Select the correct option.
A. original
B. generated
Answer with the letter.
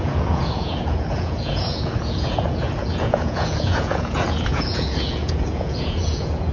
B